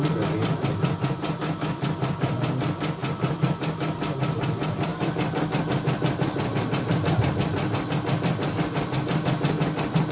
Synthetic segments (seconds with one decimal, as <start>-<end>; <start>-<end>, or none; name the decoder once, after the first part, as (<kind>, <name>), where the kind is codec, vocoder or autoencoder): none

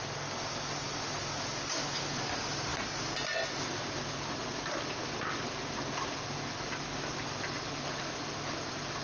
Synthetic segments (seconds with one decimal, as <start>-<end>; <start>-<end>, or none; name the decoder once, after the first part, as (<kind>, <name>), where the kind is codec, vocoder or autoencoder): none

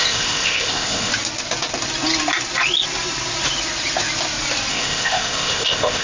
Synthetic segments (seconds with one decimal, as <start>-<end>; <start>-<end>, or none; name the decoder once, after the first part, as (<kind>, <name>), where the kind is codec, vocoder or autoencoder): 0.0-1.1 (codec, ZipCodec); 4.7-6.0

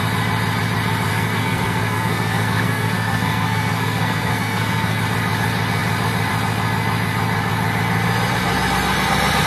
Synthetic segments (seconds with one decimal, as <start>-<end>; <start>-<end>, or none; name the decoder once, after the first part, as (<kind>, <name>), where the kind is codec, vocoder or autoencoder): 1.1-5.0 (codec, SNAC)

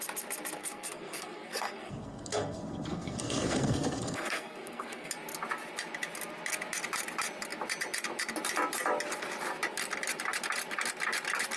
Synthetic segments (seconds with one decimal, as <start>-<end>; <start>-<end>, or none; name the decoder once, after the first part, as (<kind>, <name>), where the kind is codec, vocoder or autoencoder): 0.6-5.1 (codec, SNAC)

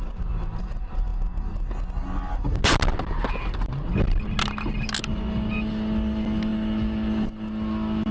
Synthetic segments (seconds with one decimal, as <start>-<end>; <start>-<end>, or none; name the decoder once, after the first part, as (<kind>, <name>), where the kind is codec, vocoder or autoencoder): none

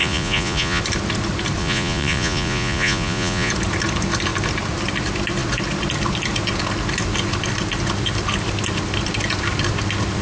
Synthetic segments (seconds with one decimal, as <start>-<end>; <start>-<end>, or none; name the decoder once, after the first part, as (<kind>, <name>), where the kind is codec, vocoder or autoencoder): 0.0-0.8 (vocoder, Vocos); 1.6-3.5

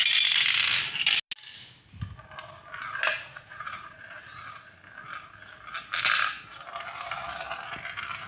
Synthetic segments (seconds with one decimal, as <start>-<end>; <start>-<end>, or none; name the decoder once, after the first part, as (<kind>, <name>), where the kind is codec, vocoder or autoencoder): 3.1-4.8 (vocoder, Vocos)